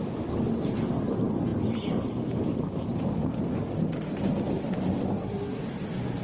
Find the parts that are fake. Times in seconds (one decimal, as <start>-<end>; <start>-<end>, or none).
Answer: 5.1-5.6